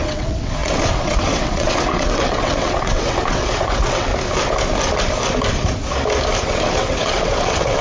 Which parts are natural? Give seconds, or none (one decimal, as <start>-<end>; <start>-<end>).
4.1-6.4